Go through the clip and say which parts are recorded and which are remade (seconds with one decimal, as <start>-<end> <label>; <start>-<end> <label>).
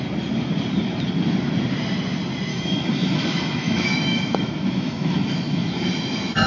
0.0-2.5 recorded; 2.5-6.5 remade